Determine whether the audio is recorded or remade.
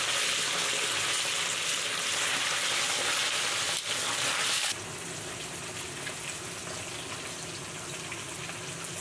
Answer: recorded